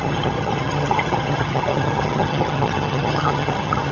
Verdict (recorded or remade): remade